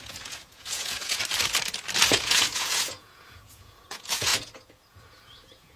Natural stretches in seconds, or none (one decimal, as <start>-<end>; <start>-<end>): 1.2-2.1